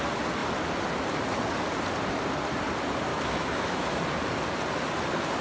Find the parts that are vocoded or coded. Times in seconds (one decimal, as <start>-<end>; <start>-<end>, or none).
3.1-4.0